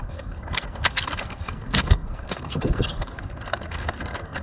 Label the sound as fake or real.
fake